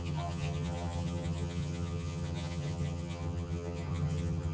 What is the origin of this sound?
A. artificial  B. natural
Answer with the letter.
A